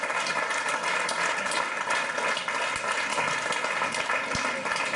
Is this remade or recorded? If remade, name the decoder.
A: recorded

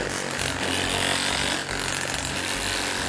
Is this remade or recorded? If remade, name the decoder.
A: recorded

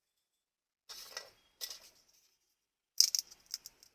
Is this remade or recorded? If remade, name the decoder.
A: recorded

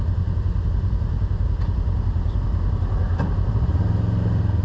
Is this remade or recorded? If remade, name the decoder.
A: recorded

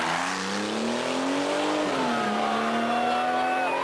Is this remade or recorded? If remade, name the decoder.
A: recorded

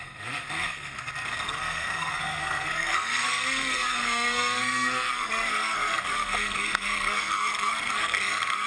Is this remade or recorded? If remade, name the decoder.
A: remade, codec, SNAC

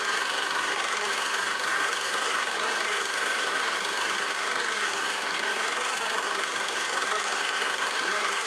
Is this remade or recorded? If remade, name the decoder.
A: remade, codec, SNAC